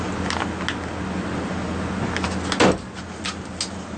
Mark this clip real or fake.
real